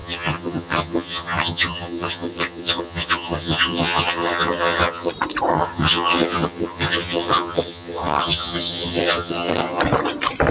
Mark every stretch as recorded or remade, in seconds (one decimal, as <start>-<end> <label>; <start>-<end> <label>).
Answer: 0.0-5.1 remade; 5.1-5.5 recorded; 5.5-9.8 remade; 9.8-10.5 recorded

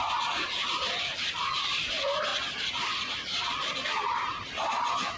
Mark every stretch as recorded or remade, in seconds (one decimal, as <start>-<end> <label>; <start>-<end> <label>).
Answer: 0.0-2.3 remade; 2.3-2.9 recorded; 2.9-5.2 remade

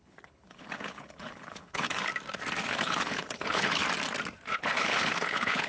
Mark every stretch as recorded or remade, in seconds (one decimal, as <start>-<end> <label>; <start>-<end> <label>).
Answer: 0.0-2.1 remade; 2.1-2.8 recorded; 2.8-3.8 remade; 3.8-4.5 recorded; 4.5-5.7 remade